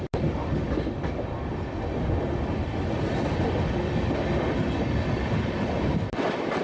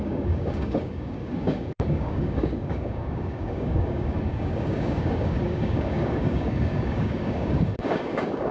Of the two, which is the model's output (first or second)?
second